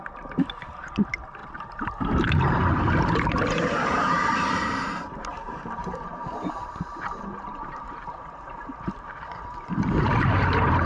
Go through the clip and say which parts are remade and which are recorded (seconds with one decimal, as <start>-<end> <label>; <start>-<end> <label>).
0.0-10.9 remade